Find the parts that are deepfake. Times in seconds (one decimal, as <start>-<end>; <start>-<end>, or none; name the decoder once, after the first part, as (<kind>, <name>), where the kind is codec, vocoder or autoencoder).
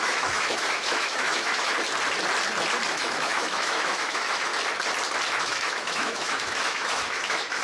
0.0-1.7 (autoencoder, DAC-VAE); 2.9-4.5; 5.4-7.6